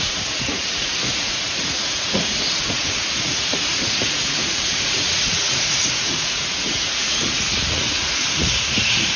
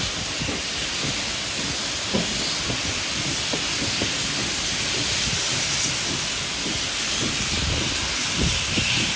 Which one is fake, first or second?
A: first